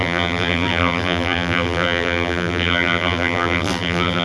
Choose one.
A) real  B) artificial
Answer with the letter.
B